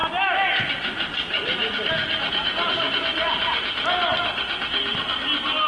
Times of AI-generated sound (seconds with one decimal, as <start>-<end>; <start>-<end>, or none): none